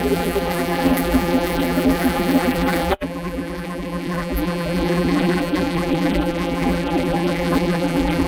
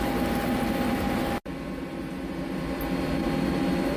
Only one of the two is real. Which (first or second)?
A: second